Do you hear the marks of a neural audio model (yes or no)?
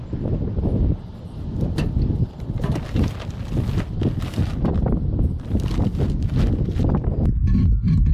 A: no